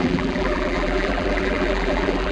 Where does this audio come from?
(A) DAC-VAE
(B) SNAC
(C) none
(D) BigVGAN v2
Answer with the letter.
D